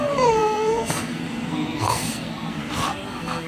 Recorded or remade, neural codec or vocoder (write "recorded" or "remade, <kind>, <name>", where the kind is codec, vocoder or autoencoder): remade, codec, SNAC